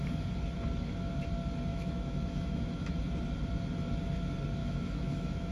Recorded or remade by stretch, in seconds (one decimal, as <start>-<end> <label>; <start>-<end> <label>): 0.0-1.7 recorded; 1.7-3.0 remade; 3.0-4.6 recorded; 4.6-5.5 remade